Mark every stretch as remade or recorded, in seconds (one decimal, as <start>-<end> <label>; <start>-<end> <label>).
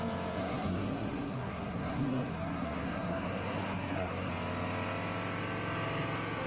0.0-0.4 recorded; 0.4-4.3 remade; 4.3-6.5 recorded